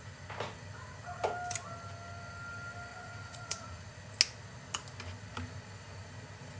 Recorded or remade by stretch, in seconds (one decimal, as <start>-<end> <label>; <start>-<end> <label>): 0.0-2.9 recorded; 2.9-3.9 remade; 3.9-6.6 recorded